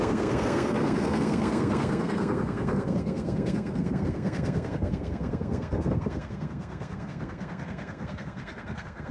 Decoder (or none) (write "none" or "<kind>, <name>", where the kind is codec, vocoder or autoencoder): codec, SNAC